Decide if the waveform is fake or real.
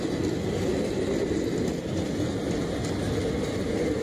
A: real